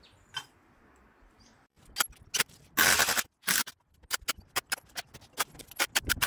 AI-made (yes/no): no